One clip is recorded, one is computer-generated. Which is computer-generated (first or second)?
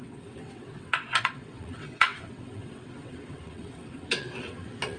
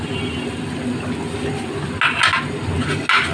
first